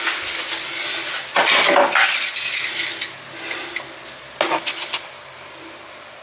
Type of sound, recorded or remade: recorded